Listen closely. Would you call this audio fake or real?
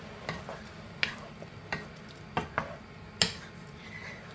real